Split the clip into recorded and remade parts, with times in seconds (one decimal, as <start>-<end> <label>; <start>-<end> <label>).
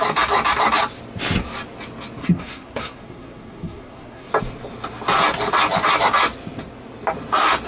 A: 0.0-2.2 recorded; 2.2-4.3 remade; 4.3-7.7 recorded